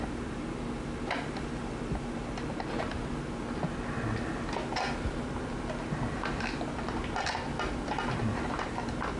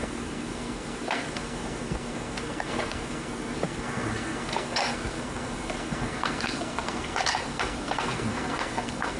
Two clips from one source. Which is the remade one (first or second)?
second